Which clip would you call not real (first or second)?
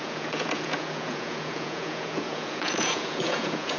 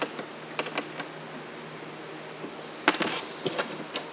first